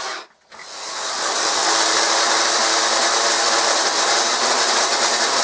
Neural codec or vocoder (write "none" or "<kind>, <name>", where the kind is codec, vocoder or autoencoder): none